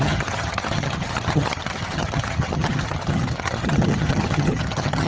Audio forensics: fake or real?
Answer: fake